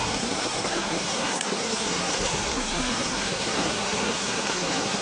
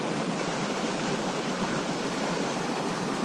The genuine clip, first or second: second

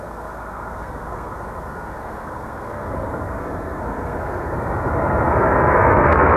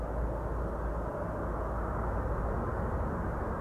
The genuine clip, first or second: second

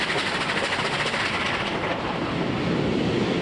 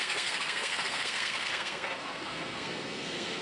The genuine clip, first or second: first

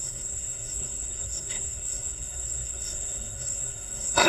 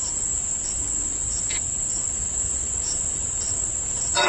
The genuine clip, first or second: second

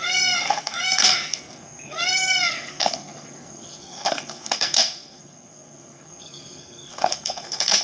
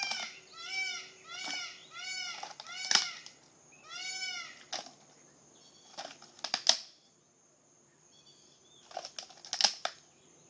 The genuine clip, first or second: second